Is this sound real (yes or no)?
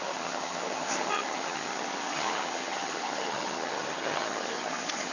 no